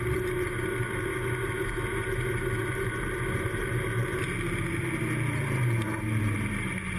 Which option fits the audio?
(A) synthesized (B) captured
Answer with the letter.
B